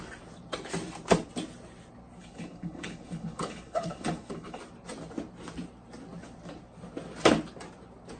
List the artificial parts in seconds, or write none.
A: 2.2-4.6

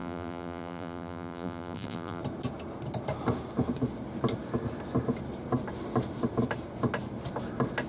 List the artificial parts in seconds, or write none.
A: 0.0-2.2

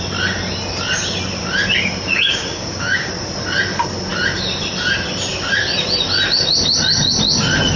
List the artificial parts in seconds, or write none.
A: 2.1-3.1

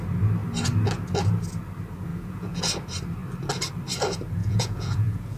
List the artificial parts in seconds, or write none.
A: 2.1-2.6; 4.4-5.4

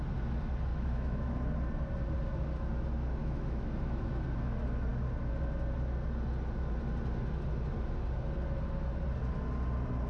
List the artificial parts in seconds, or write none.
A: 0.7-1.3; 3.2-4.1

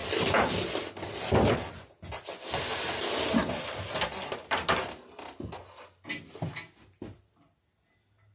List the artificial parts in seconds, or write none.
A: none

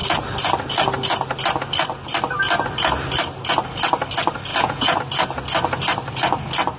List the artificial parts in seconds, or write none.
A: 4.5-5.0

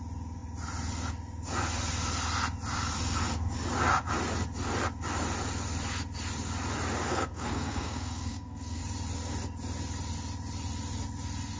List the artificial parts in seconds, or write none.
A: 7.1-8.8